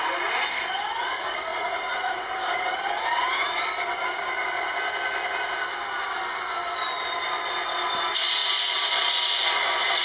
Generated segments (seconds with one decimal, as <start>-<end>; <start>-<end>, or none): 1.5-2.3